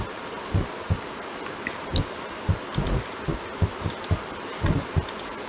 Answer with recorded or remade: recorded